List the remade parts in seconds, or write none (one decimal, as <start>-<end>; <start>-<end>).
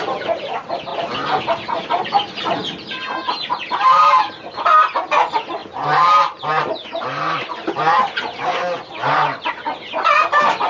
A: none